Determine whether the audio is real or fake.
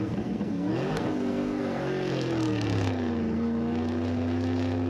fake